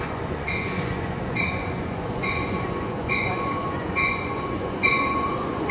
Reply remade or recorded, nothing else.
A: remade